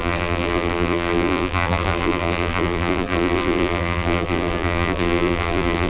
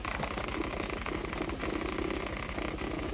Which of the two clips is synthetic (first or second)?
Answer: first